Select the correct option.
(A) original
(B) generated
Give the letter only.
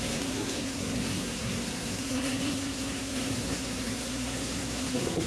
B